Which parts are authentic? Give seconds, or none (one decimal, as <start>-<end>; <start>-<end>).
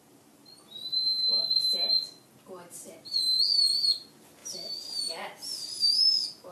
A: 0.0-6.5